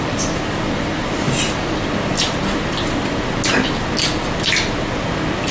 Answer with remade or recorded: recorded